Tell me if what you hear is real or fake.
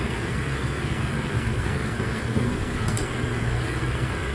fake